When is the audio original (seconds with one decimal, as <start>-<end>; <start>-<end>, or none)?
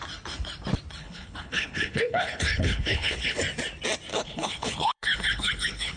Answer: 0.0-1.0; 3.4-4.1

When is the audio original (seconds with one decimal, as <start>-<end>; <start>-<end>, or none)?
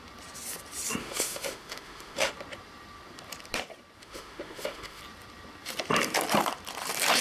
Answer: 0.0-1.0; 2.3-4.0; 5.0-7.2